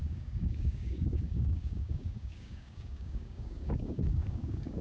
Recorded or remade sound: remade